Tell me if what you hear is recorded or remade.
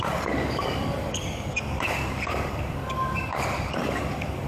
remade